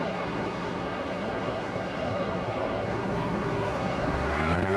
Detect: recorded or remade remade